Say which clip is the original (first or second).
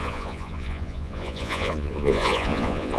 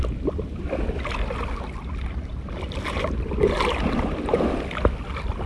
second